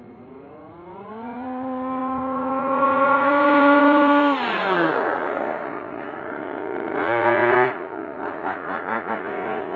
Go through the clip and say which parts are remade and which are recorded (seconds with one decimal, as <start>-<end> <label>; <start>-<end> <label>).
0.0-9.8 remade